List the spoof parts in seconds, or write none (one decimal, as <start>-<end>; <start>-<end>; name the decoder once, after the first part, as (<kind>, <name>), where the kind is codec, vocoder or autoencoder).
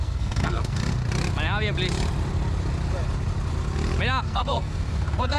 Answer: 0.0-1.0 (codec, SNAC); 4.2-5.4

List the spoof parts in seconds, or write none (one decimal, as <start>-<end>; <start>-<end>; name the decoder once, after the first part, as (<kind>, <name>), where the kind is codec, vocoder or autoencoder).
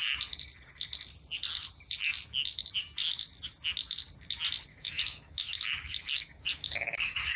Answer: 4.7-7.4 (autoencoder, DAC-VAE)